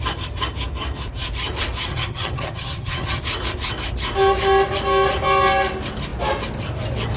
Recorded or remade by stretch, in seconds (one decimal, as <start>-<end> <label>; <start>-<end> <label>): 0.0-1.9 recorded; 1.9-3.2 remade; 3.2-7.2 recorded